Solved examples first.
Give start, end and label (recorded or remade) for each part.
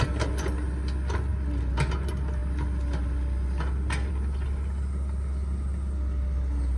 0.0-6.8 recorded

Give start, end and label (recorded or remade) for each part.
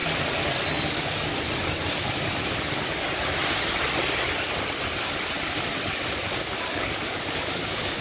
0.0-0.7 recorded; 0.7-1.3 remade; 1.3-6.1 recorded; 6.1-8.0 remade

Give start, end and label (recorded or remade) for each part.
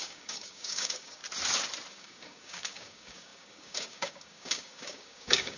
0.0-1.2 remade; 1.2-1.9 recorded; 1.9-5.6 remade